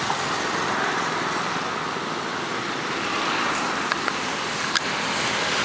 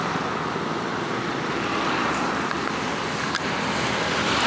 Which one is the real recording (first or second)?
second